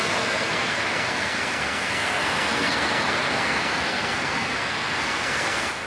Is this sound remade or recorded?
remade